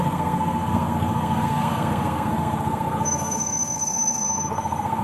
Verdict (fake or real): fake